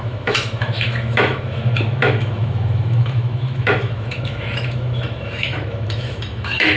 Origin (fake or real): fake